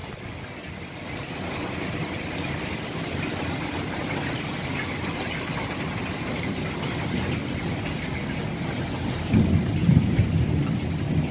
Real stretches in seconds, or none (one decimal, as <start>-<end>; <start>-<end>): 0.0-9.8; 10.5-11.3